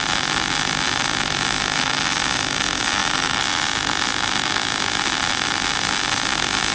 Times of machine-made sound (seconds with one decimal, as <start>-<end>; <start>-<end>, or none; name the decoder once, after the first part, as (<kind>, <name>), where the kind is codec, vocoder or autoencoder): none